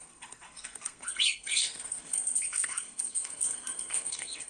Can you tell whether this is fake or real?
fake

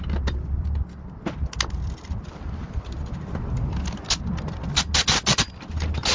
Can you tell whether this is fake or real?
real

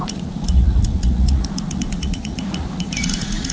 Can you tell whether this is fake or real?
fake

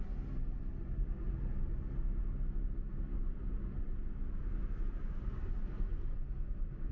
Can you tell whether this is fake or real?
real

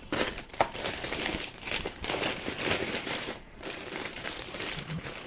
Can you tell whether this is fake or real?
fake